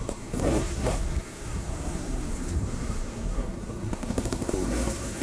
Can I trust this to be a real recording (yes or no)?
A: no